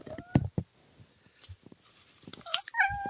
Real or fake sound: real